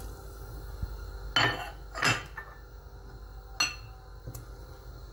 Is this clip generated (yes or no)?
no